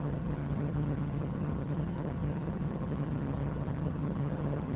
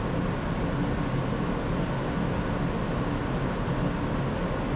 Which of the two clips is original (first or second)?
second